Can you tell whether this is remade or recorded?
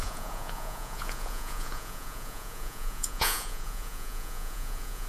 remade